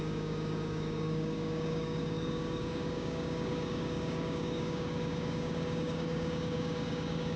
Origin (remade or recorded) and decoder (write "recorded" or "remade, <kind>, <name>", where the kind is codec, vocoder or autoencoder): remade, codec, DAC